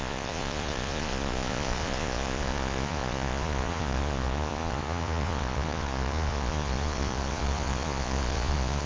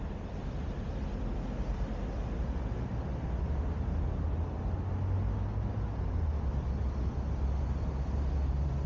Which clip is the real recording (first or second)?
second